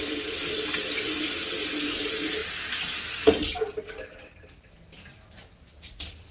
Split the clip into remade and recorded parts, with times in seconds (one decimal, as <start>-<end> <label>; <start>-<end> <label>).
0.0-6.3 recorded